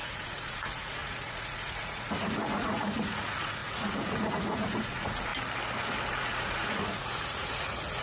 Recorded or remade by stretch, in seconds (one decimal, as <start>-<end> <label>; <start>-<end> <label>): 0.0-5.3 remade; 5.3-6.1 recorded; 6.1-8.0 remade